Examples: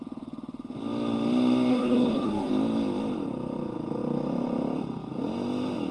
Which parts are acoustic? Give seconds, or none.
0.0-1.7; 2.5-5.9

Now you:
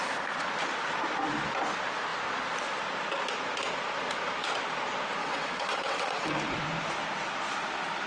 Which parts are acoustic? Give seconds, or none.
0.0-5.2; 6.3-8.1

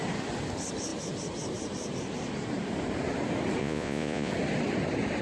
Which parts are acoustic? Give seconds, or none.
0.0-3.6; 4.3-5.2

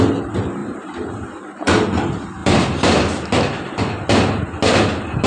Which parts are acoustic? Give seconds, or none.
0.0-0.6; 2.0-2.4; 2.9-5.3